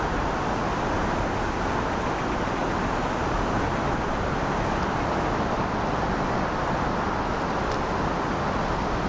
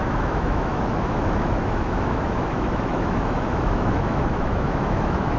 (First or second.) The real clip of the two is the first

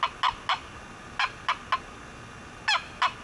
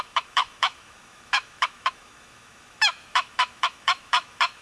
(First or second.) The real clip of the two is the first